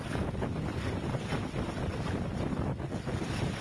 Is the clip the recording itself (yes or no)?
yes